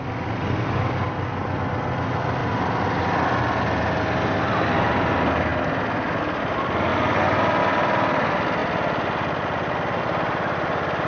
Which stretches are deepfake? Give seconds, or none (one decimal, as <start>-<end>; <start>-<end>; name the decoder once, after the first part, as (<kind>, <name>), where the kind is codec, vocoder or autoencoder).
none